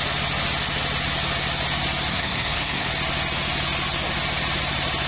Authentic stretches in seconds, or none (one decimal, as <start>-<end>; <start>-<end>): 0.0-2.1; 2.9-5.1